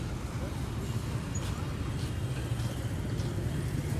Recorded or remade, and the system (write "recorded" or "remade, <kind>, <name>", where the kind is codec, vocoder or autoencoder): recorded